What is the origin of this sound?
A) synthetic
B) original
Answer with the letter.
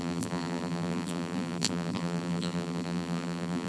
A